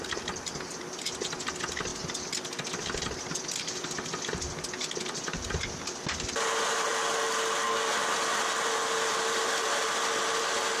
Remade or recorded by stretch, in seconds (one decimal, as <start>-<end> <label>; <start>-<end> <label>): 0.0-10.8 recorded